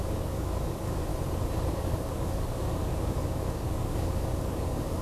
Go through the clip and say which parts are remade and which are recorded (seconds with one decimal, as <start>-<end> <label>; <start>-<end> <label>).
0.0-1.1 remade; 1.1-1.7 recorded; 1.7-5.0 remade